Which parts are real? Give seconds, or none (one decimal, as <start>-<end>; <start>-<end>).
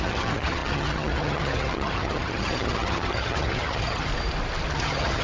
4.1-4.7